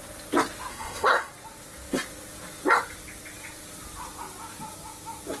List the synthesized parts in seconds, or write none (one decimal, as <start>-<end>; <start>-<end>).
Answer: 0.7-1.3